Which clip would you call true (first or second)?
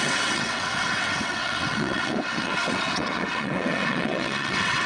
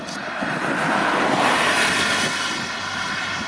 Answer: second